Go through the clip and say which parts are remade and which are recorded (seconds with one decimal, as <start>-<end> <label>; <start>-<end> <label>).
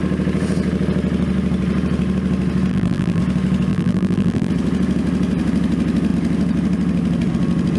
0.0-2.7 recorded; 2.7-3.2 remade; 3.2-3.7 recorded; 3.7-4.5 remade; 4.5-7.8 recorded